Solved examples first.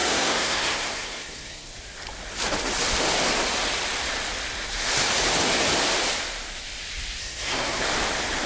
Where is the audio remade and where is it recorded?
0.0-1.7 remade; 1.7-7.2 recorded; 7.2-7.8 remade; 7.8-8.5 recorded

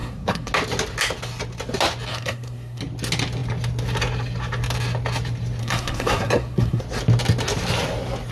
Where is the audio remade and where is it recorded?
0.0-0.5 remade; 0.5-2.1 recorded; 2.1-2.8 remade; 2.8-5.6 recorded; 5.6-6.8 remade; 6.8-8.3 recorded

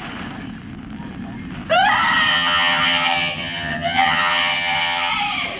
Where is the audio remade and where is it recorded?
0.0-2.3 recorded; 2.3-5.1 remade; 5.1-5.6 recorded

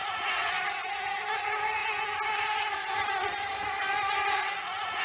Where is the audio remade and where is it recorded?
0.0-0.7 remade; 0.7-5.0 recorded

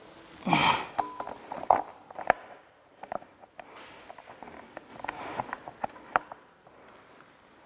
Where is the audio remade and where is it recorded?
0.0-1.9 recorded; 1.9-3.3 remade; 3.3-4.9 recorded; 4.9-5.4 remade; 5.4-6.1 recorded; 6.1-6.8 remade; 6.8-7.7 recorded

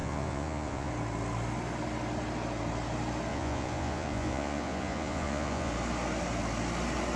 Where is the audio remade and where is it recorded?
0.0-0.9 remade; 0.9-3.3 recorded; 3.3-5.7 remade; 5.7-7.2 recorded

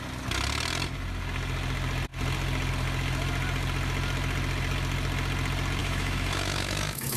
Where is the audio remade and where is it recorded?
0.0-5.8 recorded; 5.8-7.2 remade

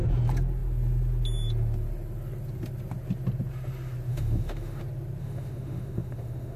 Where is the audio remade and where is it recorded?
0.0-4.1 recorded; 4.1-4.8 remade; 4.8-5.2 recorded; 5.2-6.6 remade